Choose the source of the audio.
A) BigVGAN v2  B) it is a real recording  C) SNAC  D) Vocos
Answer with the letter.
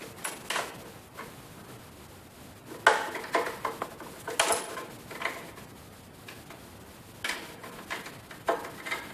B